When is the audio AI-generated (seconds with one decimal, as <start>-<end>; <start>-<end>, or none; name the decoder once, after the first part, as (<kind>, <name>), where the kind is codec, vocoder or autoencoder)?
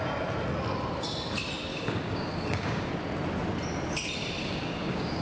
1.7-2.9 (codec, DAC); 4.4-5.2